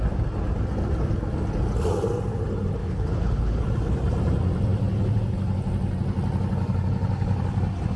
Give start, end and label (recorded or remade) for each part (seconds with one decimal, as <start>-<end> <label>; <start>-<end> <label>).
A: 0.0-2.8 recorded; 2.8-3.6 remade; 3.6-8.0 recorded